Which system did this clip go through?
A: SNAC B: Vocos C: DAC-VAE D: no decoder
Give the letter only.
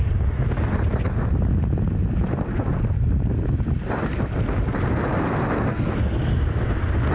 D